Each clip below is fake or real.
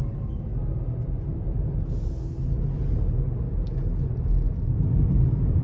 real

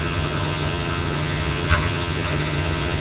fake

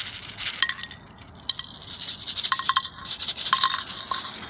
real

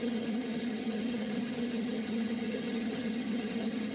fake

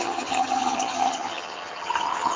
fake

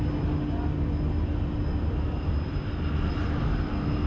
real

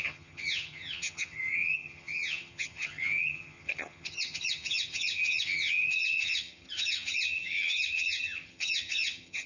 fake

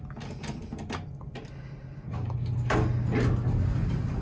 real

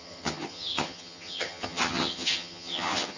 fake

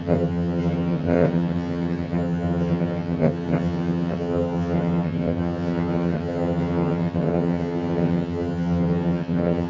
fake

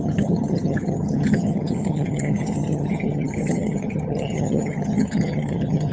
fake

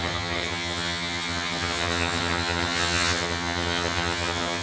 fake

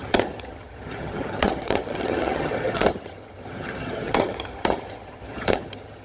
fake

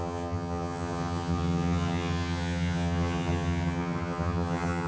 fake